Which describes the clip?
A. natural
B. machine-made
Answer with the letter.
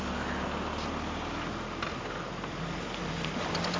A